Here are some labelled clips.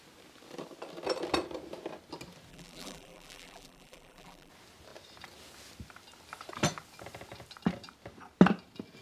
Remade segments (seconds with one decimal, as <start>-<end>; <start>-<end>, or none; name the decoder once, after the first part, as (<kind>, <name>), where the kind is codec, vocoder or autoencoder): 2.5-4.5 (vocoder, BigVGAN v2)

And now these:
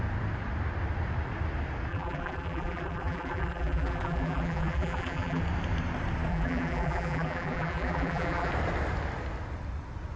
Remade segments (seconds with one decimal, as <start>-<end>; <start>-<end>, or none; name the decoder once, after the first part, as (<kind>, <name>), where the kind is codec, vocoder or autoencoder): 1.9-5.4 (vocoder, BigVGAN v2); 6.3-8.5

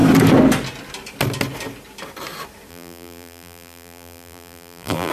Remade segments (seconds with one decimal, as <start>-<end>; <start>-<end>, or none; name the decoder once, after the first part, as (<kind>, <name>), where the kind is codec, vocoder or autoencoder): 2.7-5.1 (vocoder, BigVGAN v2)

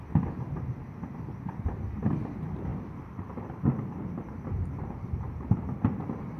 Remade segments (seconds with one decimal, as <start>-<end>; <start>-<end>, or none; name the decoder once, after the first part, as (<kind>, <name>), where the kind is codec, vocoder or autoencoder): 2.7-6.0 (vocoder, BigVGAN v2)